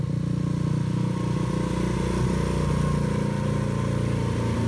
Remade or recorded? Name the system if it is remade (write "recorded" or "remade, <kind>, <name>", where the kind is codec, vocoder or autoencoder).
recorded